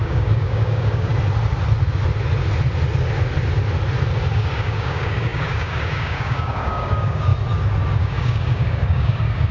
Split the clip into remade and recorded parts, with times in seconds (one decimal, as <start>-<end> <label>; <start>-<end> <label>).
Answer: 0.0-1.1 remade; 1.1-4.3 recorded; 4.3-7.3 remade; 7.3-8.0 recorded; 8.0-9.5 remade